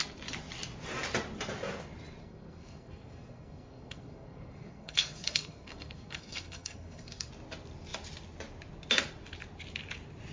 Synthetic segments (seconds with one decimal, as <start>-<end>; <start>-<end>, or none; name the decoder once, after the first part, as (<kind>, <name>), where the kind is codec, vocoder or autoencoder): 2.2-7.3 (codec, SNAC)